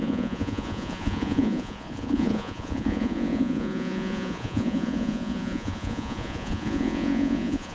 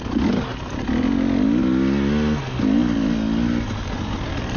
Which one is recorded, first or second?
second